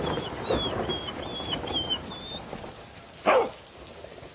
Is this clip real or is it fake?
real